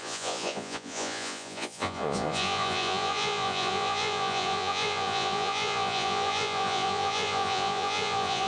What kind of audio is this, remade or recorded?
remade